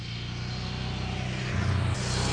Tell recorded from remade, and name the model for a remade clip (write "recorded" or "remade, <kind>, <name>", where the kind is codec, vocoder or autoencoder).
recorded